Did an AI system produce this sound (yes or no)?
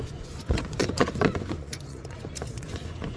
yes